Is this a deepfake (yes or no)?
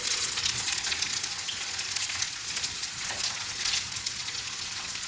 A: yes